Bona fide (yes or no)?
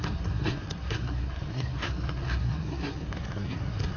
no